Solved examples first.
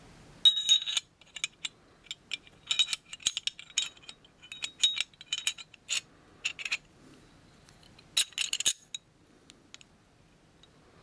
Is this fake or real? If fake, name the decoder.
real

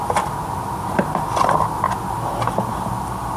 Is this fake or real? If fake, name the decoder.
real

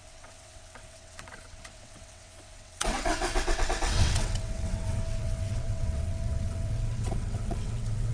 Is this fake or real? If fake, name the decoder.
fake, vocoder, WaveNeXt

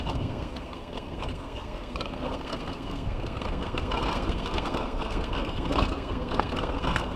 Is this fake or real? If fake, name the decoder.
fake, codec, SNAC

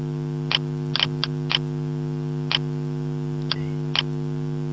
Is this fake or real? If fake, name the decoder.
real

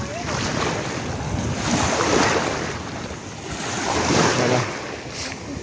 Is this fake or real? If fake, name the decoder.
real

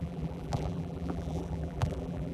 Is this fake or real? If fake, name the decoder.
fake, vocoder, BigVGAN v2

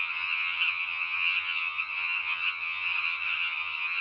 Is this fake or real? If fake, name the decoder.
fake, vocoder, HiFi-GAN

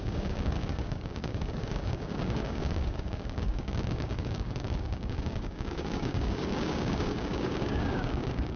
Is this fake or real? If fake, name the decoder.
fake, codec, DAC